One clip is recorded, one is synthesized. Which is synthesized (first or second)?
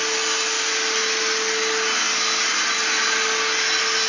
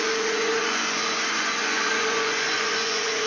second